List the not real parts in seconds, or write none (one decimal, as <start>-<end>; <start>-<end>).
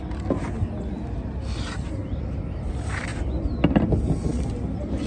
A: none